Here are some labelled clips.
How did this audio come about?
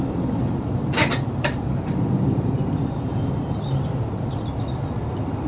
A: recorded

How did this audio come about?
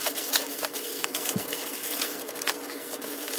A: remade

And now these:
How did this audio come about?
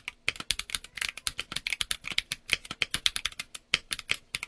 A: recorded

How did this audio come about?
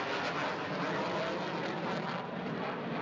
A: recorded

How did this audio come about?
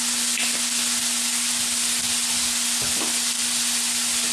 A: recorded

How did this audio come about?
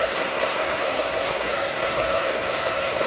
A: remade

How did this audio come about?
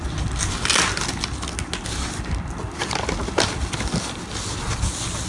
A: recorded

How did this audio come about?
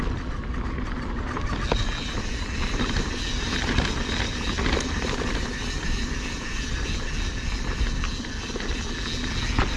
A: recorded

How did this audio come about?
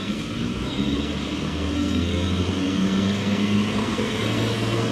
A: remade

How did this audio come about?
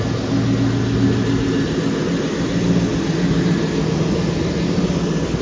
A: recorded